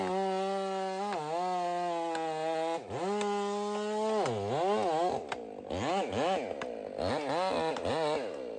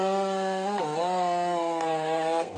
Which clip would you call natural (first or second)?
first